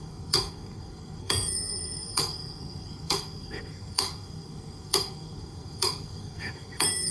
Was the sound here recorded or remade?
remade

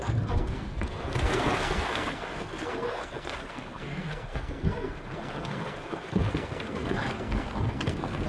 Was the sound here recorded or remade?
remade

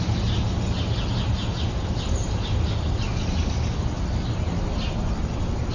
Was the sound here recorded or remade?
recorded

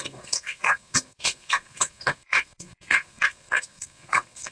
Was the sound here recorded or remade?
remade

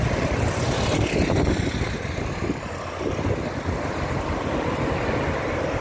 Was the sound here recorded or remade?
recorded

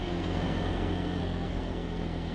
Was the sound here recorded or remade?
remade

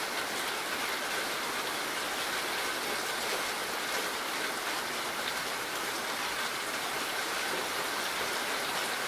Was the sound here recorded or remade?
recorded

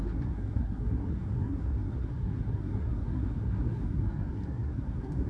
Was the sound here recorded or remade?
remade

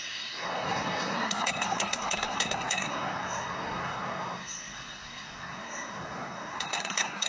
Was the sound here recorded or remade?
remade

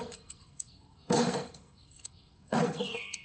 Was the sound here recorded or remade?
remade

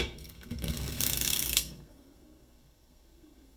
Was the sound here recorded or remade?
remade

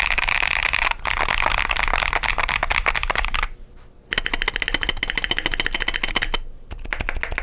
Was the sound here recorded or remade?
recorded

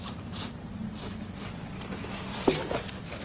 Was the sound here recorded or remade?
recorded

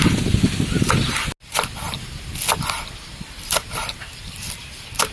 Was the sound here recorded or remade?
recorded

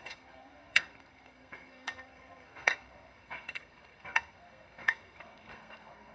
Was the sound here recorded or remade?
remade